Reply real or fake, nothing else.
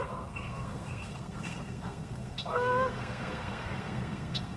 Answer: fake